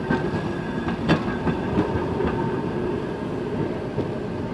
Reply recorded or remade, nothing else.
recorded